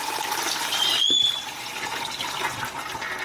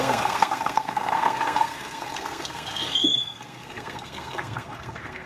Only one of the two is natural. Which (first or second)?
first